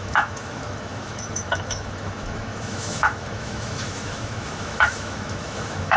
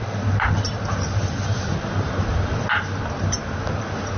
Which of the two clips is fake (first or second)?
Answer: first